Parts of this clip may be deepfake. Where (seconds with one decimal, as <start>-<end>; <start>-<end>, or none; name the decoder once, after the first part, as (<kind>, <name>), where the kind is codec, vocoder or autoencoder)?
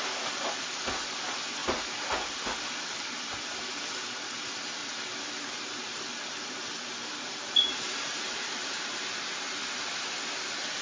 1.6-2.4 (vocoder, BigVGAN v2); 4.8-8.9